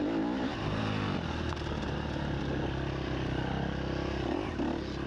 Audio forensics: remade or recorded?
recorded